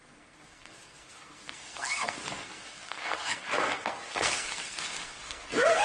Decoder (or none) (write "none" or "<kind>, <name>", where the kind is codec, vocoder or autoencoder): codec, SNAC